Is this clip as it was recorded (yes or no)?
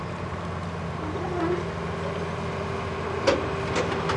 yes